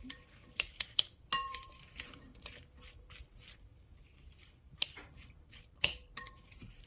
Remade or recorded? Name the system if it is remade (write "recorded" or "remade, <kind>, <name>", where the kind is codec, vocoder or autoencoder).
remade, vocoder, BigVGAN v2